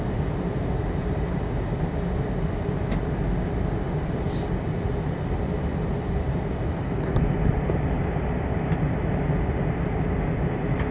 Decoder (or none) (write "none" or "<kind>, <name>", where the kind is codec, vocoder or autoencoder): none